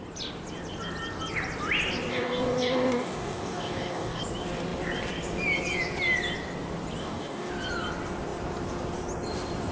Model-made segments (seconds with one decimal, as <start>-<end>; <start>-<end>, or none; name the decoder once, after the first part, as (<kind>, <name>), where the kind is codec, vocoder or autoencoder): 2.1-4.2 (codec, DAC); 7.0-7.5